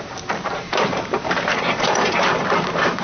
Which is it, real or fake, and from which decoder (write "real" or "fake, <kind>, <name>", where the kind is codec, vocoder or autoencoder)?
fake, vocoder, BigVGAN v2